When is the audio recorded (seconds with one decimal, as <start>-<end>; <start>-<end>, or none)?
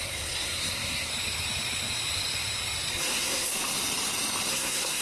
1.1-2.9; 3.5-4.5